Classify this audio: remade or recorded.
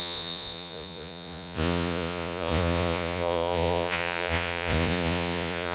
remade